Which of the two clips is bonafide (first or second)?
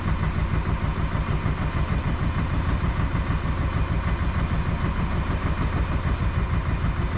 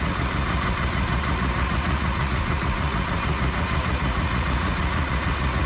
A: first